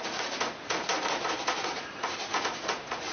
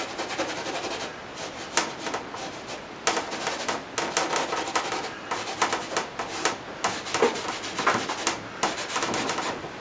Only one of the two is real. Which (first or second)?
second